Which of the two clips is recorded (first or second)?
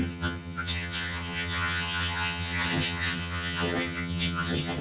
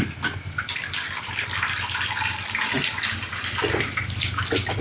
second